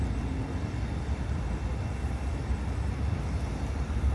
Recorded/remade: recorded